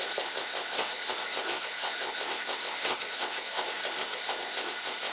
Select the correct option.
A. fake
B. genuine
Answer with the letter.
A